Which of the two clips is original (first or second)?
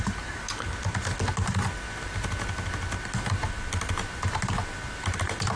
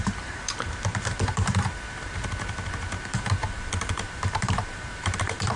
first